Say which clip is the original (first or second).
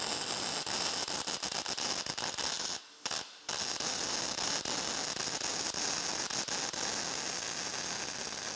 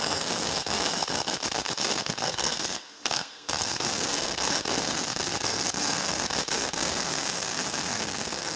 first